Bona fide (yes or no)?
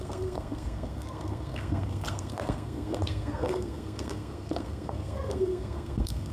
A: no